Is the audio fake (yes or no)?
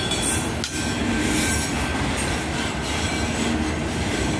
no